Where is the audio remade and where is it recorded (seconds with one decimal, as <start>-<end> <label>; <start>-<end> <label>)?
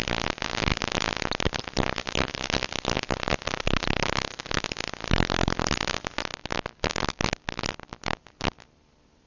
0.0-9.3 recorded